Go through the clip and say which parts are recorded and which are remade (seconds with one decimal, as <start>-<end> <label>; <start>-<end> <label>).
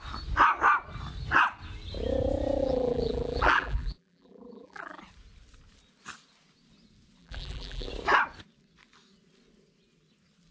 0.0-2.6 recorded; 2.6-5.0 remade; 5.0-7.2 recorded; 7.2-7.9 remade; 7.9-10.5 recorded